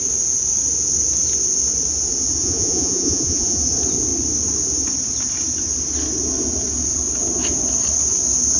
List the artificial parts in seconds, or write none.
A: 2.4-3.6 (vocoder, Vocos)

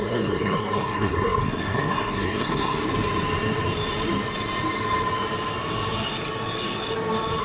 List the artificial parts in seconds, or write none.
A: 0.0-2.9 (codec, SNAC)

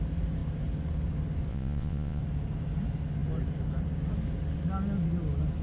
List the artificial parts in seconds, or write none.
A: 1.5-2.2 (vocoder, Vocos)

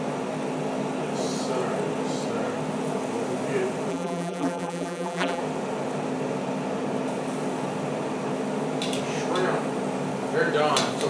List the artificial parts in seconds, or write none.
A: 3.9-5.4 (vocoder, BigVGAN v2)